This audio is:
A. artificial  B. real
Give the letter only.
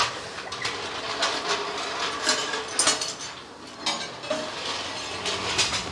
B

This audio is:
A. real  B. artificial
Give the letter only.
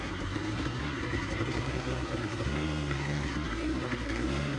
B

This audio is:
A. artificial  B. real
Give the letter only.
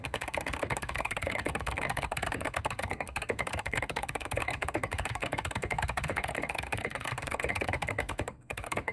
A